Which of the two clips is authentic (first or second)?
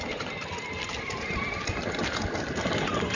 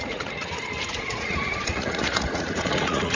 first